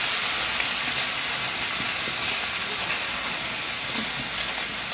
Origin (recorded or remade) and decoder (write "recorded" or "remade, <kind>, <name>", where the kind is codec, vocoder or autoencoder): recorded